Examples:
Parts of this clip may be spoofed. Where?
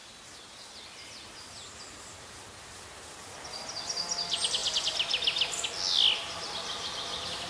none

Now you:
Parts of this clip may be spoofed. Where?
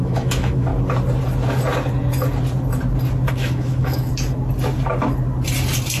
0.0-0.7; 3.3-4.1